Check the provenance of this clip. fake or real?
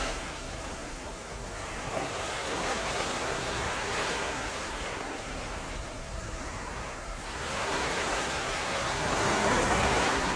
fake